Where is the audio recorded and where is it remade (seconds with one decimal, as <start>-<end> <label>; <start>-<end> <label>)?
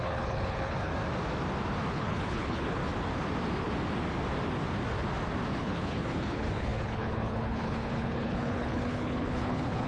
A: 0.0-0.9 remade; 0.9-1.9 recorded; 1.9-2.8 remade; 2.8-5.5 recorded; 5.5-9.9 remade